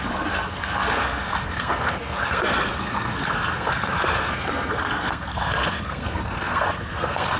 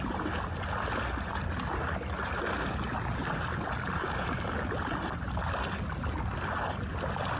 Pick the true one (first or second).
second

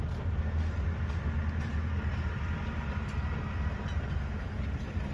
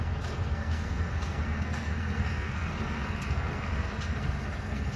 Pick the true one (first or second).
first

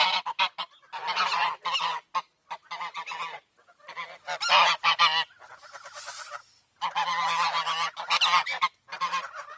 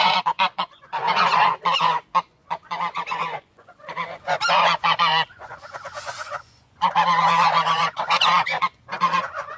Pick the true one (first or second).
first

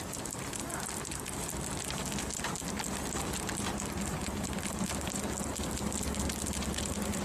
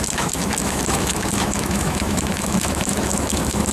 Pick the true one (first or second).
first